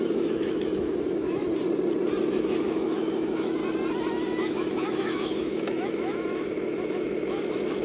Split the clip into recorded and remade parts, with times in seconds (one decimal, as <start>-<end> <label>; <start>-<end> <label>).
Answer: 0.0-1.5 remade; 1.5-2.2 recorded; 2.2-3.6 remade; 3.6-4.4 recorded; 4.4-7.8 remade